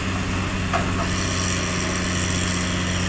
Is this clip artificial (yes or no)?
no